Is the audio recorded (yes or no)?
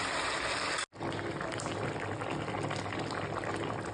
yes